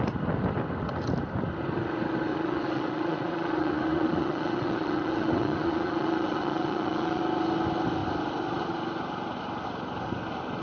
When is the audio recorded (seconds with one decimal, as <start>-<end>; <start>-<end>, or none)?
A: 0.0-2.3; 7.2-10.6